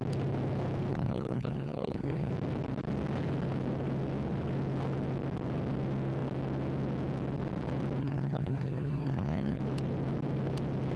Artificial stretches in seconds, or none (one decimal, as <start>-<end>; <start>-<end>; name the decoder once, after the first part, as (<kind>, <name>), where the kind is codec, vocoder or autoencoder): 0.9-2.3 (codec, SNAC); 8.0-9.6